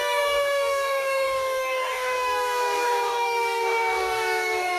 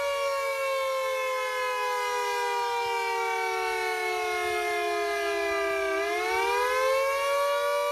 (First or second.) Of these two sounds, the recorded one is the second